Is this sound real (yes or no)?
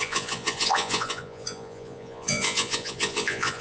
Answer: no